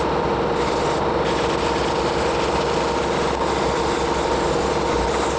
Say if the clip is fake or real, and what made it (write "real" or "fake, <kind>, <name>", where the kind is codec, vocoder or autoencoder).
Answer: real